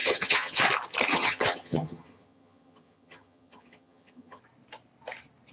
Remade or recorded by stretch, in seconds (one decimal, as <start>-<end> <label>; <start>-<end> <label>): 0.0-0.6 remade; 0.6-1.1 recorded; 1.1-4.4 remade; 4.4-5.5 recorded